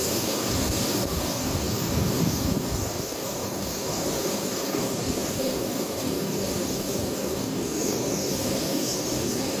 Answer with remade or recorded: remade